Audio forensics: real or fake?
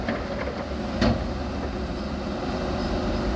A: real